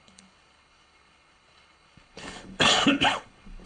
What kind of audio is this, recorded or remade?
remade